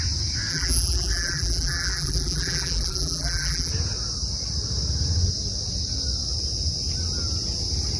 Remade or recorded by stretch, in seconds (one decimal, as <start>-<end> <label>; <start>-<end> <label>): 0.0-0.5 recorded; 0.5-3.7 remade; 3.7-8.0 recorded